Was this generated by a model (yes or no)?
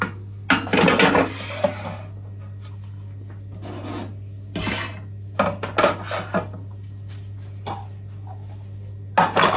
no